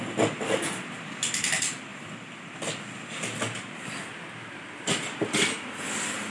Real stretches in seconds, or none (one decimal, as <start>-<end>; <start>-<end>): 0.0-6.3